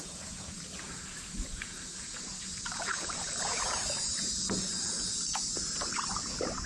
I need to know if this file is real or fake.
fake